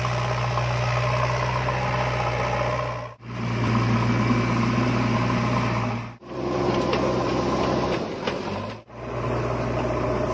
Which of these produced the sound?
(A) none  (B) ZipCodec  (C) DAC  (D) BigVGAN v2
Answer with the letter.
A